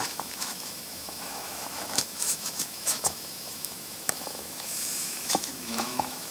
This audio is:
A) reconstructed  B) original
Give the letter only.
A